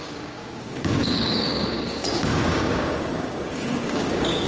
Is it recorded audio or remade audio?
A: remade